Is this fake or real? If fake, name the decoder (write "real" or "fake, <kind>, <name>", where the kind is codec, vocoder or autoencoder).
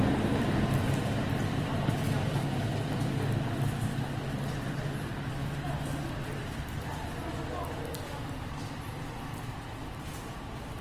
real